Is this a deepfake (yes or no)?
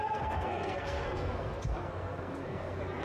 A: yes